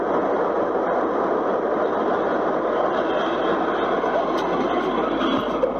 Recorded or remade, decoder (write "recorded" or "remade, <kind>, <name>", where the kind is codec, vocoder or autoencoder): recorded